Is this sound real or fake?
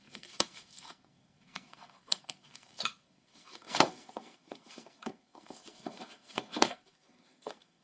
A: fake